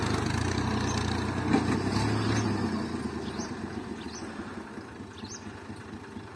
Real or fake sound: real